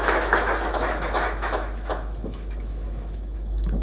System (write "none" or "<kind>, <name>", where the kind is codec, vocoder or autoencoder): autoencoder, DAC-VAE